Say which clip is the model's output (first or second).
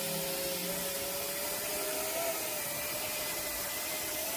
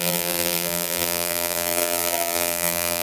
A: second